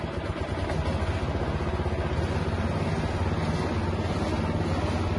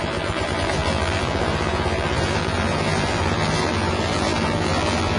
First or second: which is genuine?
first